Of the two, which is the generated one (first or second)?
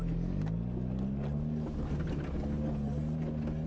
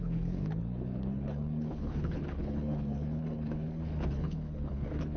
second